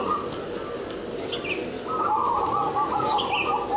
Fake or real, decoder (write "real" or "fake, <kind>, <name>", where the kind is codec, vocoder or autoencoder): real